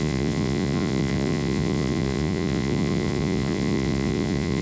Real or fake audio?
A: fake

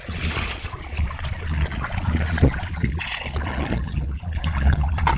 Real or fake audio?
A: fake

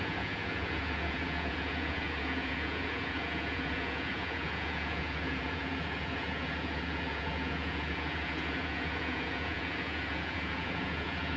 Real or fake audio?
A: fake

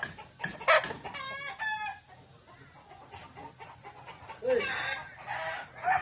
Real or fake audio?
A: real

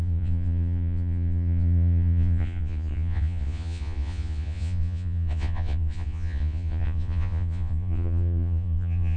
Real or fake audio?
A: fake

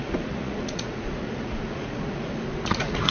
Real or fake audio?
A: fake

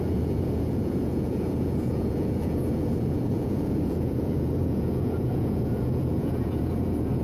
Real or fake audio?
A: fake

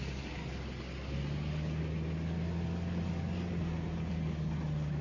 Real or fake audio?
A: real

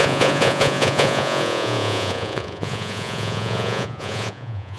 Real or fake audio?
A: fake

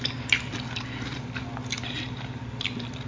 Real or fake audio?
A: real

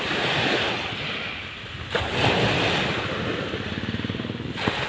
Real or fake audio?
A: real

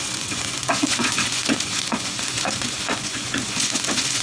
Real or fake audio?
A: fake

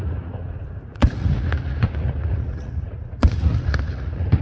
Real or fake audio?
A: fake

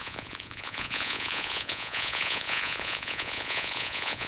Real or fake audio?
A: fake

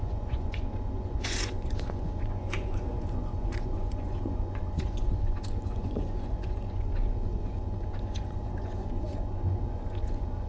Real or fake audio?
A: fake